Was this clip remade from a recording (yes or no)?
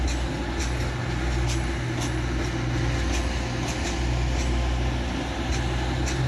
no